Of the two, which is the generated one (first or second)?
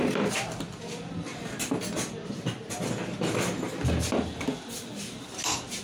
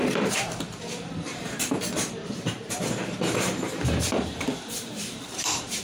second